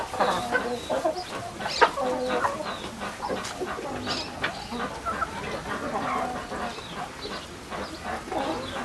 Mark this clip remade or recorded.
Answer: recorded